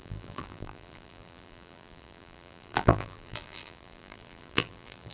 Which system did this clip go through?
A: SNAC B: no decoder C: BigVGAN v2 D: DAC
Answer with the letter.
C